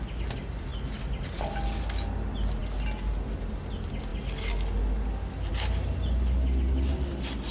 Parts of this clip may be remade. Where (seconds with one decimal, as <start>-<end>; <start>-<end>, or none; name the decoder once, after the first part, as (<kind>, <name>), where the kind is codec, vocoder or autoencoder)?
none

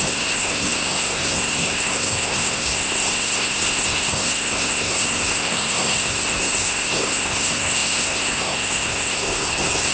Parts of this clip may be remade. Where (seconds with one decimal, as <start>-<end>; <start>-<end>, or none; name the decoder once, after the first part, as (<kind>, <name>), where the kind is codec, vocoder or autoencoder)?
0.0-9.9 (codec, SNAC)

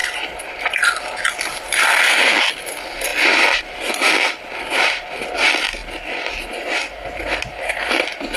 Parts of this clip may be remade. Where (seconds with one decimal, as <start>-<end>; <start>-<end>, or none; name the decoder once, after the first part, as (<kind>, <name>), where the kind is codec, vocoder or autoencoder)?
none

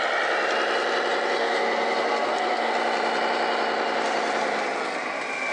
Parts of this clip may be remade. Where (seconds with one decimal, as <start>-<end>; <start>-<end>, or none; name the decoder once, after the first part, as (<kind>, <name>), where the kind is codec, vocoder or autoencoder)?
1.4-2.7 (codec, SNAC)